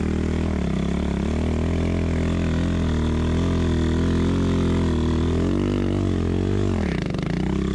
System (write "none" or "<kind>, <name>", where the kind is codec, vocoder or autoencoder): none